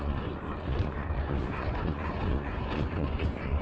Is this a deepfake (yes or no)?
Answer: yes